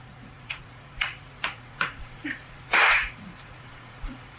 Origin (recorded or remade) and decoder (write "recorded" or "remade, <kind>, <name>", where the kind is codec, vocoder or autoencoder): remade, vocoder, Vocos